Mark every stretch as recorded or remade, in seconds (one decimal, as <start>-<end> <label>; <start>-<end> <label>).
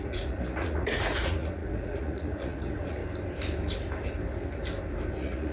0.0-3.0 remade; 3.0-5.1 recorded; 5.1-5.5 remade